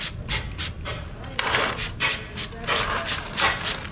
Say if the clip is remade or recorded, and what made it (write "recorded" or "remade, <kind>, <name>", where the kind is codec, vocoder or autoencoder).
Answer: recorded